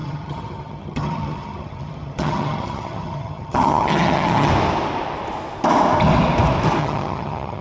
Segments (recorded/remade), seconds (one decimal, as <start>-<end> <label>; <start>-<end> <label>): 0.0-4.5 remade; 4.5-6.8 recorded; 6.8-7.6 remade